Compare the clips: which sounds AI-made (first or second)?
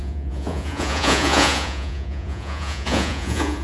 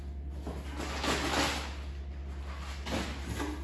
first